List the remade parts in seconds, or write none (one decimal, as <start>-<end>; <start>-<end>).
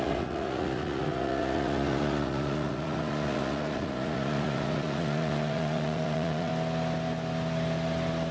0.0-6.5